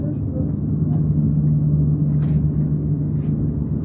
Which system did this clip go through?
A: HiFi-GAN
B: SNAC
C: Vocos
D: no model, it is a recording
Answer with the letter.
D